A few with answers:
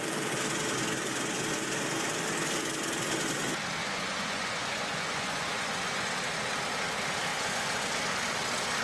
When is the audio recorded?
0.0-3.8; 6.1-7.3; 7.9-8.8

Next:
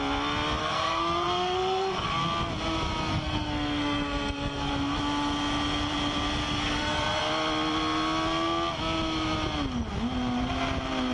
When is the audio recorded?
0.0-0.6; 2.2-3.1; 4.7-6.4; 7.2-11.1

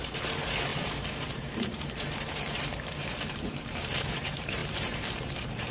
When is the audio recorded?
none